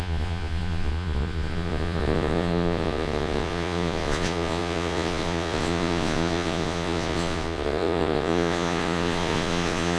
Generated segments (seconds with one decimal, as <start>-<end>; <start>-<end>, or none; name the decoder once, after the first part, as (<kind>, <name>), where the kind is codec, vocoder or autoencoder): 0.0-10.0 (vocoder, Vocos)